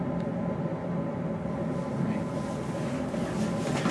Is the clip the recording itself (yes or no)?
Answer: yes